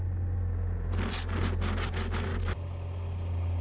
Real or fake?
real